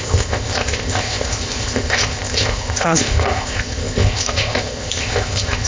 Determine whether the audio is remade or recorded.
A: remade